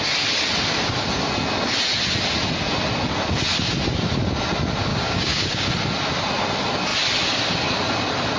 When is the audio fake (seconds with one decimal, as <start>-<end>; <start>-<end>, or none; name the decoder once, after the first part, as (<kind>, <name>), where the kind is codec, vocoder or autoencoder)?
4.9-5.7 (codec, DAC)